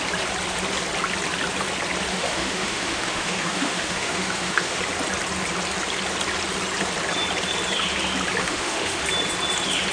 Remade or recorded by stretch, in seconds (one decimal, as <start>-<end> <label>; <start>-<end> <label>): 0.0-2.1 recorded; 2.1-4.8 remade; 4.8-8.4 recorded; 8.4-9.0 remade; 9.0-9.9 recorded